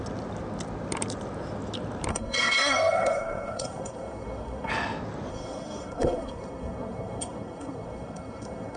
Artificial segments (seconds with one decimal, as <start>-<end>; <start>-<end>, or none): 2.1-4.7; 5.3-8.8